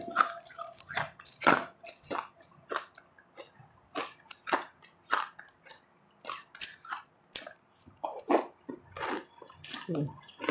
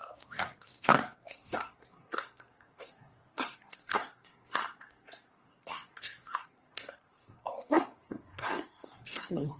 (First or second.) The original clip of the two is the first